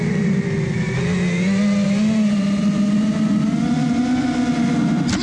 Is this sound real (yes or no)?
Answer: yes